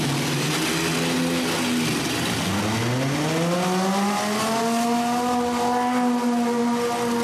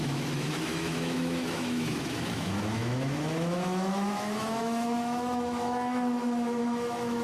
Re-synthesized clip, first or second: second